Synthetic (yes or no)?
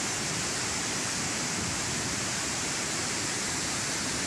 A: yes